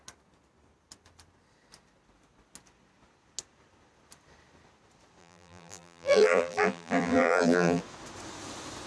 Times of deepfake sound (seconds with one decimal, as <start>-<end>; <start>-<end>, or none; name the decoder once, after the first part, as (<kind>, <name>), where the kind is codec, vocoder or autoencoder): 5.2-7.8 (vocoder, BigVGAN v2)